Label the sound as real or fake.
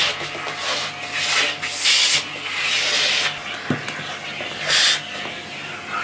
real